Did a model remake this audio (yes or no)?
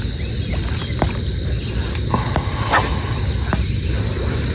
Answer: no